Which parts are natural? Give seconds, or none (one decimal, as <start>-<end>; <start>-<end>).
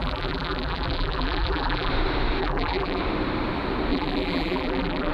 1.9-2.4; 3.0-3.9